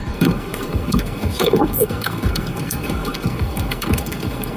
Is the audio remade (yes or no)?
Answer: yes